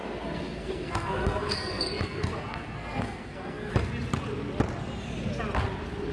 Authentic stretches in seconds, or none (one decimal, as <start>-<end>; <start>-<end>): 3.7-6.1